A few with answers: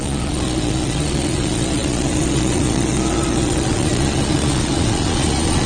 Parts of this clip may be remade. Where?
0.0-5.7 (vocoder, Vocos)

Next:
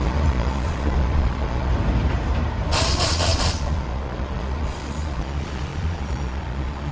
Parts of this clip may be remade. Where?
0.0-1.7 (vocoder, Vocos); 2.7-6.9

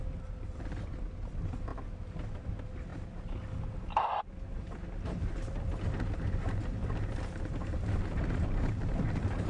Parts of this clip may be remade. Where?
none

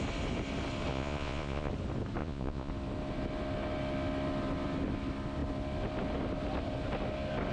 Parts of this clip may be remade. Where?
0.9-1.7 (vocoder, Vocos); 2.2-2.7